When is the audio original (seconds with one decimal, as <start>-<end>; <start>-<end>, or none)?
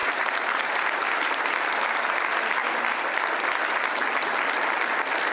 0.7-5.3